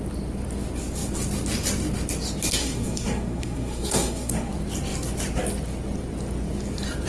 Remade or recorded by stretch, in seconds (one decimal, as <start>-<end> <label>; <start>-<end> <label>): 0.0-2.6 recorded; 2.6-4.5 remade; 4.5-7.1 recorded